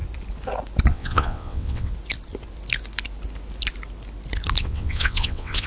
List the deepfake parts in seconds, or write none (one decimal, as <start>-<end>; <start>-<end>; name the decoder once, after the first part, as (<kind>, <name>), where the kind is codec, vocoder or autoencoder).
0.9-1.9 (vocoder, WaveNeXt); 4.6-5.7